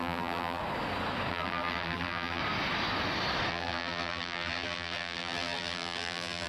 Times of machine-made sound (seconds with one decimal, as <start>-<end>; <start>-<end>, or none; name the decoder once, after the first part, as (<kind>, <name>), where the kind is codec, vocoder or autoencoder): 0.0-0.6 (vocoder, BigVGAN v2); 1.3-2.4; 3.5-6.5